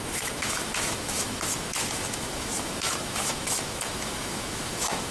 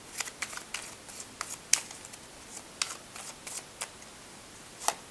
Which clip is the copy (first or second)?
first